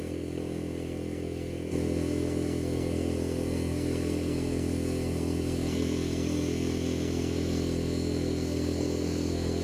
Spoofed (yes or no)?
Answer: yes